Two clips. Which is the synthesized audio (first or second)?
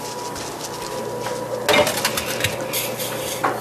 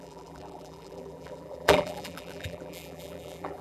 second